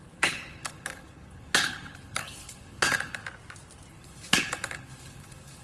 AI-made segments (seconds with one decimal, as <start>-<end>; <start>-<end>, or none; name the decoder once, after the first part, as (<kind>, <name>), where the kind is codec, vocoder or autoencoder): 0.0-3.2 (codec, HILCodec); 3.9-5.6